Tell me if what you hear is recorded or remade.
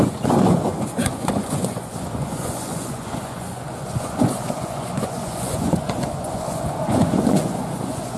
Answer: remade